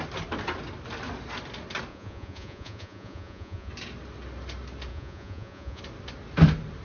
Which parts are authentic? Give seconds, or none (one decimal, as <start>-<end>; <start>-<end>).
0.0-1.9; 3.7-4.9; 5.8-6.8